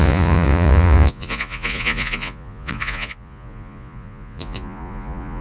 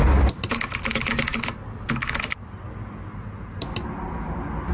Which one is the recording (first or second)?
second